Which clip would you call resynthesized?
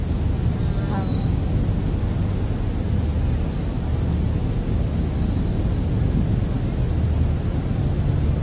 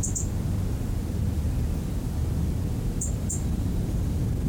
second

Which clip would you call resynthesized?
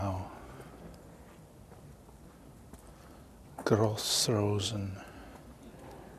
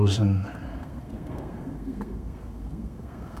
second